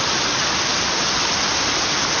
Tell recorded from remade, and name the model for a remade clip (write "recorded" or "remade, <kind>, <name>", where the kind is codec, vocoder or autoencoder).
recorded